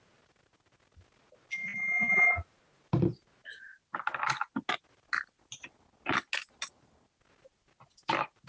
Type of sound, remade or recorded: recorded